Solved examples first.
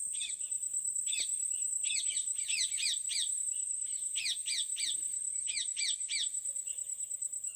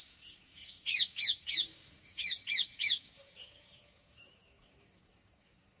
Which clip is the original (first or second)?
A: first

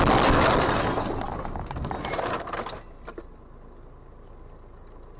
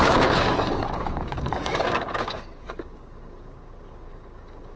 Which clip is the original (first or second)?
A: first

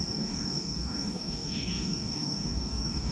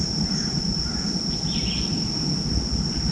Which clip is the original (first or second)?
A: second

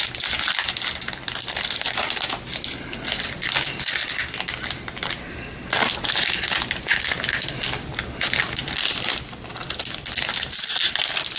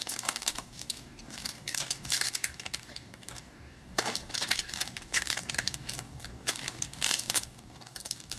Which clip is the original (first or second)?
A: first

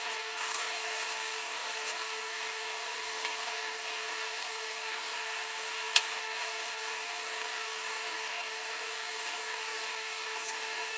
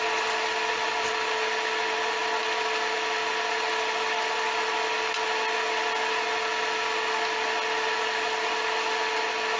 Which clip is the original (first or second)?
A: second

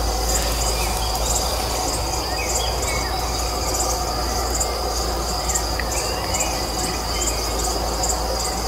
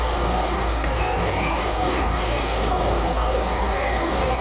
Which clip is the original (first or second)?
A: first